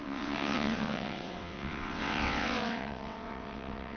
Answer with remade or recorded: remade